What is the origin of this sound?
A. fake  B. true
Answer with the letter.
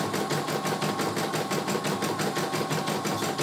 B